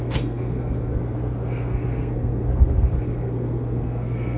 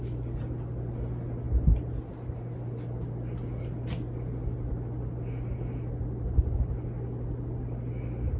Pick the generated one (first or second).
first